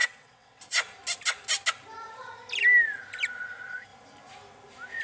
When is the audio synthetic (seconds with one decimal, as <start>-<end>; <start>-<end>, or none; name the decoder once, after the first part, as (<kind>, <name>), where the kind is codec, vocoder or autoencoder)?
0.0-0.6 (vocoder, WaveNeXt)